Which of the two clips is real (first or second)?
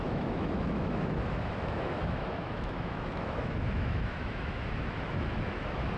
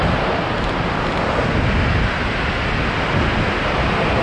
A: second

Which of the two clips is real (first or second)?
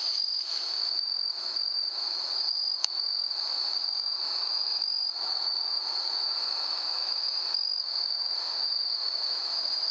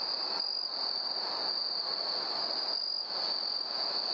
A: second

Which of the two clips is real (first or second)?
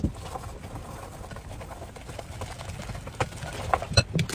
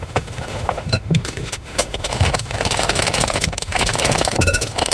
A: first